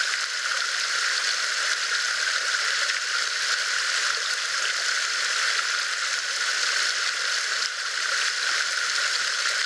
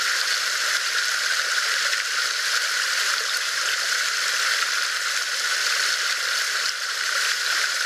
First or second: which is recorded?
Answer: first